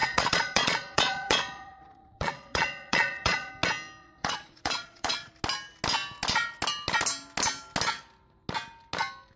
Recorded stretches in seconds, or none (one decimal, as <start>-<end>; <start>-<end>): 3.5-4.0; 5.3-9.4